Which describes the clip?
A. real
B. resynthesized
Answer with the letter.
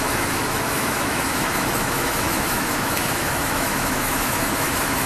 B